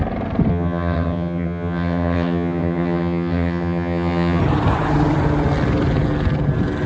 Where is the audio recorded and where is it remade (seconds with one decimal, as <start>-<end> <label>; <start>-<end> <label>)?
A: 0.0-0.5 recorded; 0.5-4.4 remade; 4.4-6.9 recorded